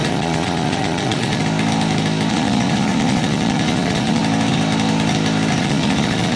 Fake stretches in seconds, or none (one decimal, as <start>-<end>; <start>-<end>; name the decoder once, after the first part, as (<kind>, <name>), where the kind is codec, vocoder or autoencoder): 0.0-1.4 (vocoder, Vocos); 2.3-4.2; 5.6-6.4